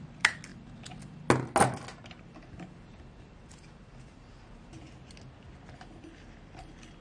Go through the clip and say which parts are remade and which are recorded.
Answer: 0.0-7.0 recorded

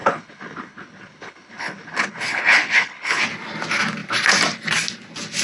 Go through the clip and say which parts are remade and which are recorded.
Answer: 0.0-3.2 remade; 3.2-5.4 recorded

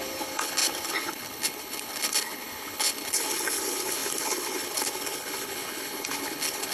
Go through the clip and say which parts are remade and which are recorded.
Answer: 0.0-6.7 remade

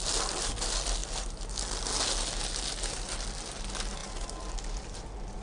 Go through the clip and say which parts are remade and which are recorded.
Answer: 0.0-5.4 recorded

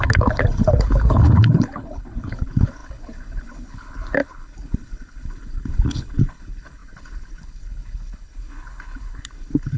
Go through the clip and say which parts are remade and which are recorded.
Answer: 0.0-9.8 remade

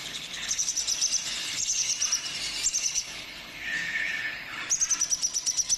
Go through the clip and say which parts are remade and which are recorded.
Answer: 0.0-0.7 remade; 0.7-1.4 recorded; 1.4-1.9 remade; 1.9-2.8 recorded; 2.8-4.6 remade; 4.6-5.8 recorded

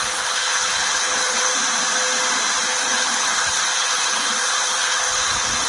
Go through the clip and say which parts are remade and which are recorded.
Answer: 0.0-1.5 remade; 1.5-2.6 recorded; 2.6-5.7 remade

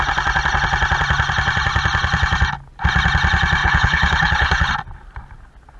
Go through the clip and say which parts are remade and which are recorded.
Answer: 0.0-3.6 recorded; 3.6-4.7 remade; 4.7-5.8 recorded